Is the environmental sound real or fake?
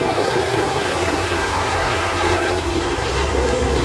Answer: fake